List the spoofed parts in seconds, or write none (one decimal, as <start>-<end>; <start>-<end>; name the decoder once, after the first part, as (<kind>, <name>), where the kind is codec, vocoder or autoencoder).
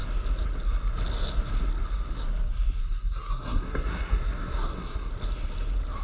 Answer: 2.8-5.1 (codec, SNAC)